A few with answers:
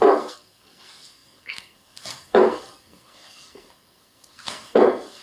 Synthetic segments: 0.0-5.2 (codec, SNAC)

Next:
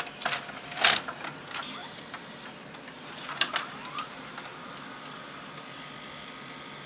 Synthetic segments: 1.8-3.5 (vocoder, BigVGAN v2)

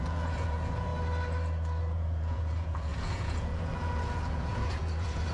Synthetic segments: 0.0-0.9 (vocoder, Vocos); 1.8-5.3

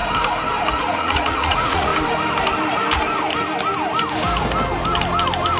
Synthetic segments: 0.8-1.9 (vocoder, Vocos)